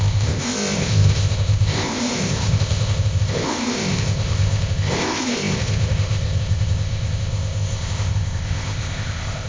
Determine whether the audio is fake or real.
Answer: fake